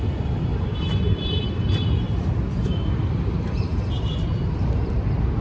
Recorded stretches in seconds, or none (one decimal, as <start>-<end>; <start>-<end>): 0.0-0.5; 1.8-2.7; 4.9-5.4

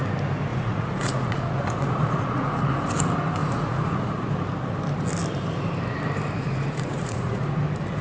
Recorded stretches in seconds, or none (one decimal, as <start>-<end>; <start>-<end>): 0.0-0.5; 2.8-3.4; 4.3-6.4; 7.6-8.0

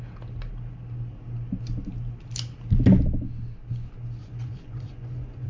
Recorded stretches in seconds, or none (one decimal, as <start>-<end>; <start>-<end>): 0.0-4.2

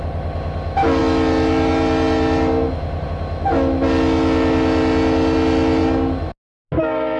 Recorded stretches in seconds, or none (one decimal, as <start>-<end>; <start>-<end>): 0.0-7.2

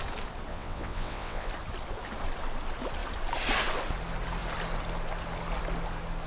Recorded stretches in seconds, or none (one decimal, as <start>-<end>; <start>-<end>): 0.0-0.5; 1.5-6.3

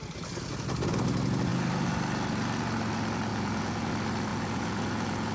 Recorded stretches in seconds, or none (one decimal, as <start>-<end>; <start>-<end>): 0.0-3.3; 3.9-4.3

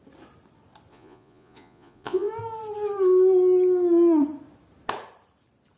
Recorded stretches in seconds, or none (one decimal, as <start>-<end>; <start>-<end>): 0.0-0.9; 2.3-5.8

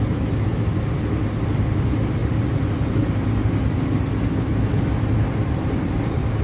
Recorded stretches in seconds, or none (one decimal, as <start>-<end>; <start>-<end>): 0.5-1.8